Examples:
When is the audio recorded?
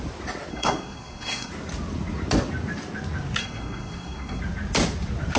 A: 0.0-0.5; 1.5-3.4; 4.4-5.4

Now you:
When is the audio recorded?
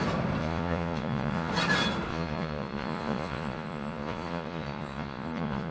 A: 0.0-0.4; 1.5-2.1